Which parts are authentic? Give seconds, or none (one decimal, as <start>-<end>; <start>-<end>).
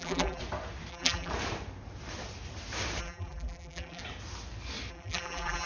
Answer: 0.4-0.9; 1.3-3.0; 4.0-4.9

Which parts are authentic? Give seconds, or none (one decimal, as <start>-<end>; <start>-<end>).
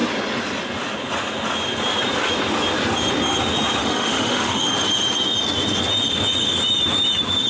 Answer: 0.0-3.8; 4.6-7.5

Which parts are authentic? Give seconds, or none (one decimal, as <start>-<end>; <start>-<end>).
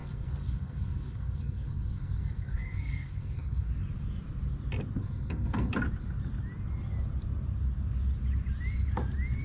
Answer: 3.7-5.0; 5.7-9.4